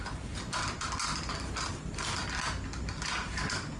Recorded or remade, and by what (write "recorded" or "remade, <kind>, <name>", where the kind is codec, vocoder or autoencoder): recorded